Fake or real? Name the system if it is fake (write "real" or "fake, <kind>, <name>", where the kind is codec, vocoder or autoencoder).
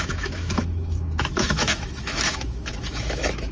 fake, autoencoder, DAC-VAE